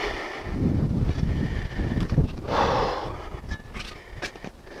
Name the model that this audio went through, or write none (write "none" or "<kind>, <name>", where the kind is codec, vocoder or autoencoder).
none